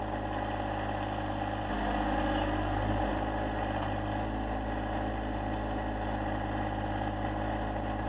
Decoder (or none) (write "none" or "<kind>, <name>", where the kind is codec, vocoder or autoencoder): none